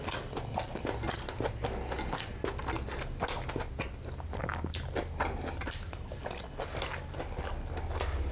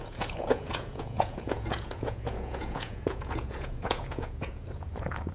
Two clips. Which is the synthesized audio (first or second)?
second